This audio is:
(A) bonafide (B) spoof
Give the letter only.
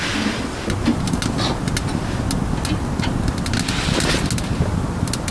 A